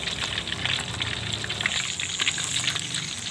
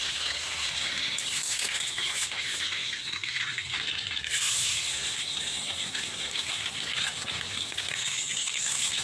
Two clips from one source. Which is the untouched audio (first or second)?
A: first